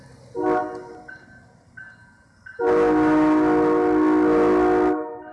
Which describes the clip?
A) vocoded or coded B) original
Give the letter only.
B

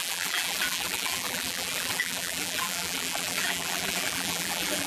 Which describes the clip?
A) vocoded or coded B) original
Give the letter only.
A